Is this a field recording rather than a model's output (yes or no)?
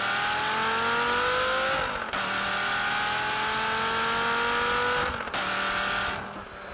yes